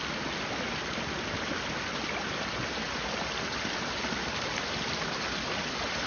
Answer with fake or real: real